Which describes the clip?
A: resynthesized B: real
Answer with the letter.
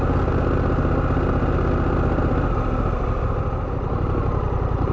B